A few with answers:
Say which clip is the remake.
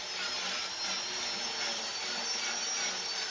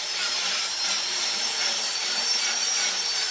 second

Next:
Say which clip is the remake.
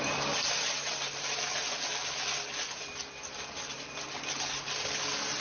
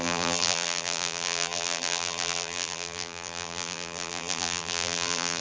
second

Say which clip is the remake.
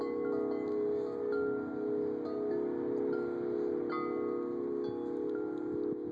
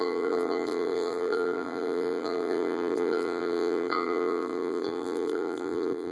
second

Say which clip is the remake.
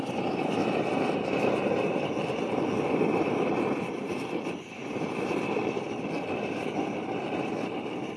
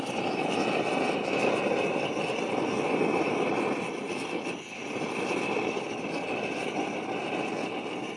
first